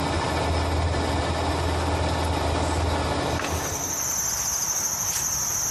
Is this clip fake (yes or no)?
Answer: no